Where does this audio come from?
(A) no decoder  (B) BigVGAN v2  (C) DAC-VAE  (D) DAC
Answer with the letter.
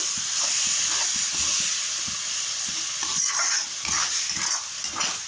A